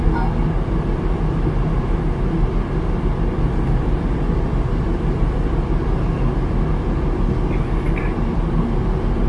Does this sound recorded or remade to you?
recorded